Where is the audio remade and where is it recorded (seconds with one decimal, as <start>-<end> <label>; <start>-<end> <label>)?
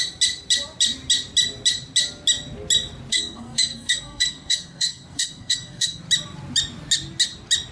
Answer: 0.0-3.1 recorded; 3.1-6.0 remade; 6.0-7.7 recorded